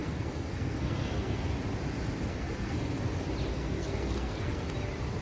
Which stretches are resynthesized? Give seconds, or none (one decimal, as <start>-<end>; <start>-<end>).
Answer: 0.0-1.5; 2.3-3.0; 3.5-4.7

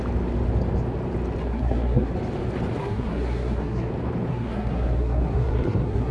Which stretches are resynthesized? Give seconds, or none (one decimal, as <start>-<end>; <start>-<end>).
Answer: 1.4-2.1; 2.8-3.9; 4.3-6.1

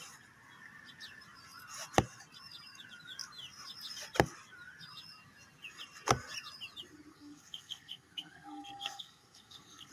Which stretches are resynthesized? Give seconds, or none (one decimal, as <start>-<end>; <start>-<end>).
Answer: 7.1-9.9

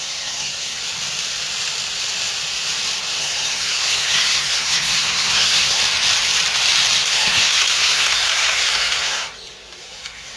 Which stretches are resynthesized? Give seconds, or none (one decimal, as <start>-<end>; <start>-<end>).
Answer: 0.0-0.8; 3.2-5.8; 7.0-9.3; 9.8-10.4

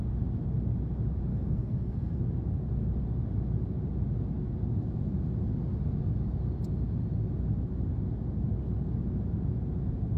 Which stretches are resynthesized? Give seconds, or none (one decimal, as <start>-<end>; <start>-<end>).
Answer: 1.3-2.2

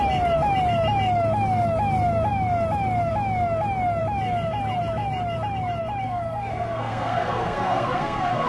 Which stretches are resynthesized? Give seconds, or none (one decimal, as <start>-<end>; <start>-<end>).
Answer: 6.0-8.5

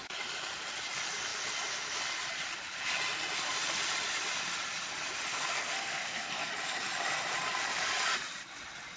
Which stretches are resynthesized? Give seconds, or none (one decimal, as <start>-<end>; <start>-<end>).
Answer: 5.3-6.5

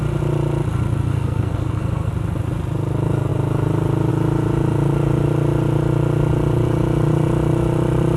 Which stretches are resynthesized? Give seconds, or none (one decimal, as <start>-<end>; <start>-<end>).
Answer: 1.1-2.1